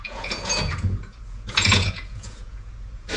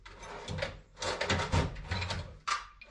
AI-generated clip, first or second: first